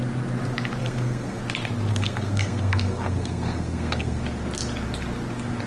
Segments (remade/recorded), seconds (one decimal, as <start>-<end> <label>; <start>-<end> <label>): 0.0-0.8 recorded; 0.8-1.4 remade; 1.4-1.9 recorded; 1.9-4.2 remade; 4.2-5.7 recorded